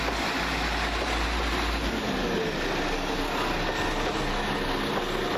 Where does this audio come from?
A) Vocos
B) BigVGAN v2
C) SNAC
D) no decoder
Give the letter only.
D